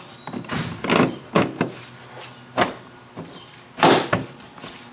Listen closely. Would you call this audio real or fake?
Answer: real